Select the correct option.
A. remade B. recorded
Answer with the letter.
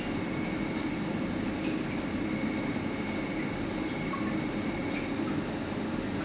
B